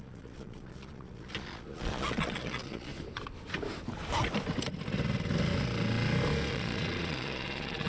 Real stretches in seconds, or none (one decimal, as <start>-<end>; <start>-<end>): 2.9-6.5